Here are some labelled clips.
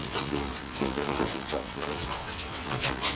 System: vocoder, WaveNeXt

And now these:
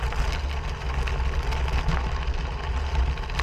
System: none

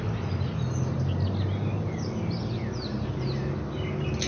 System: none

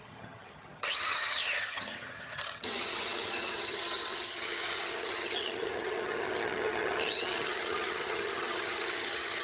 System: vocoder, HiFi-GAN